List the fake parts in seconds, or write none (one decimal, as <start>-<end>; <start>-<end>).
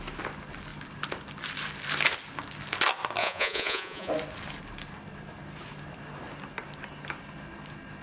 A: 3.2-4.1